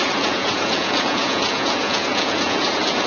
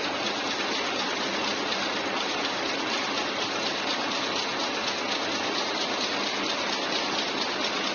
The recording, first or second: second